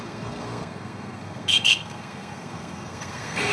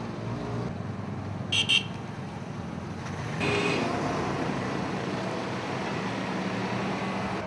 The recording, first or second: second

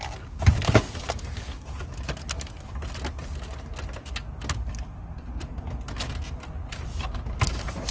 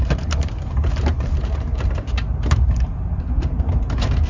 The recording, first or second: first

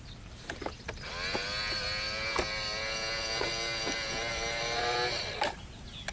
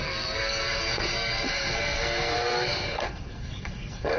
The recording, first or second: first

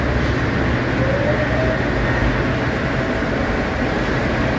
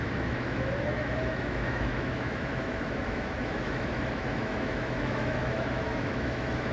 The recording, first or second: first